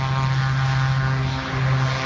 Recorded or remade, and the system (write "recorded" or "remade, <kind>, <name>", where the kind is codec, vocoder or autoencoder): recorded